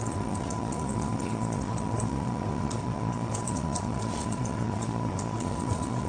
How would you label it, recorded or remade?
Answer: remade